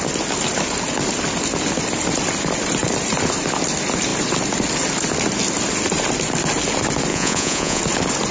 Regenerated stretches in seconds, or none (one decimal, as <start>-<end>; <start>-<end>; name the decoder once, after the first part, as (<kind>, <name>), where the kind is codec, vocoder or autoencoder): 7.1-7.8 (vocoder, Vocos)